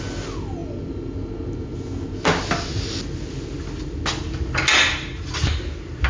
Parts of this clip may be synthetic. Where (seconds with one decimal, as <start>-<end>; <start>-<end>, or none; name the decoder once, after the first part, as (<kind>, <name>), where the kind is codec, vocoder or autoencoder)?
none